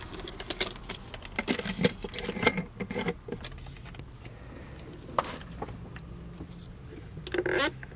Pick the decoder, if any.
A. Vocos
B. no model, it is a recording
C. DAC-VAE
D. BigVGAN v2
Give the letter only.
B